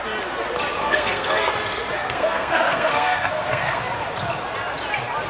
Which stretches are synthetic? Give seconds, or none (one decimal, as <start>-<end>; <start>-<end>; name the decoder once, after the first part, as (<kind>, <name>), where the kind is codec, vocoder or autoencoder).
0.8-1.5 (codec, SNAC); 2.0-3.8

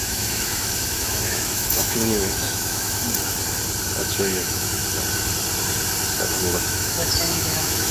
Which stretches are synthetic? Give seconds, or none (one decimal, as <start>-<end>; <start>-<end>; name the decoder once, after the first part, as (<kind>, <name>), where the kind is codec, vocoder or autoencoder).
0.0-3.0 (autoencoder, DAC-VAE); 4.0-4.8; 6.2-7.9

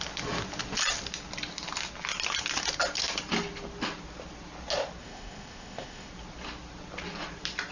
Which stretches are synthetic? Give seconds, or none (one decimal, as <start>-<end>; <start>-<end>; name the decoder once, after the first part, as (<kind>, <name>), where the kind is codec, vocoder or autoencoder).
5.0-6.1 (codec, ZipCodec)

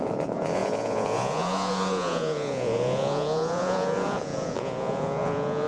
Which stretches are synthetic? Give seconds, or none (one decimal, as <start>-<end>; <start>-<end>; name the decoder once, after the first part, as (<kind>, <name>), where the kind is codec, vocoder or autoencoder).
0.0-5.7 (vocoder, Vocos)

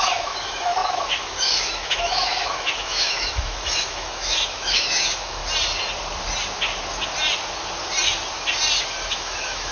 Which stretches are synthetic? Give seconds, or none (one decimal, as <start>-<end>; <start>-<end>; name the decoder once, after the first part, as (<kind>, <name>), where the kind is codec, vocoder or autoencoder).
0.0-5.4 (autoencoder, DAC-VAE); 9.1-9.7

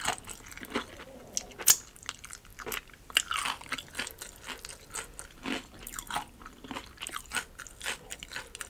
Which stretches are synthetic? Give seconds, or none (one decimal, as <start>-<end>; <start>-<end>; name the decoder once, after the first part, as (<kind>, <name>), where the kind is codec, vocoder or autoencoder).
none

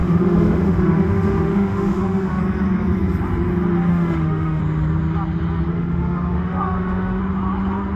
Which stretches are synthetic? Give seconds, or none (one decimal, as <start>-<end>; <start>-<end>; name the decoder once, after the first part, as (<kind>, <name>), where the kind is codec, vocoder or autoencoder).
0.0-2.4 (autoencoder, DAC-VAE); 3.9-4.6; 5.7-7.2